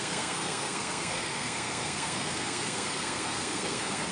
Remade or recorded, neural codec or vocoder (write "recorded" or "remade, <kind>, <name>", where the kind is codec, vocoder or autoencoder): remade, codec, SNAC